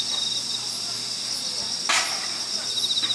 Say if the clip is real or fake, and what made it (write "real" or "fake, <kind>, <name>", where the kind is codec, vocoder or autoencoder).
real